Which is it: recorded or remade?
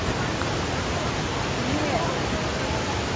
recorded